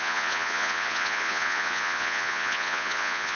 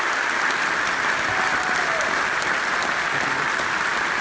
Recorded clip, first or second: second